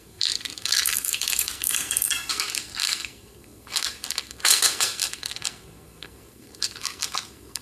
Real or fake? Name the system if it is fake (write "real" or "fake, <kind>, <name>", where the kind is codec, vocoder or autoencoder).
fake, codec, SNAC